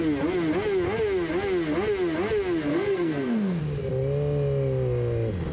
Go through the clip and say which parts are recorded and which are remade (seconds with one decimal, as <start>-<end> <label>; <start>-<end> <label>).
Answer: 0.0-2.7 recorded; 2.7-3.6 remade; 3.6-5.5 recorded